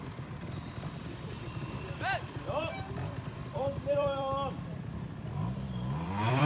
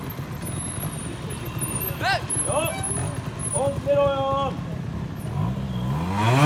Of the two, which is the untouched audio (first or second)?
second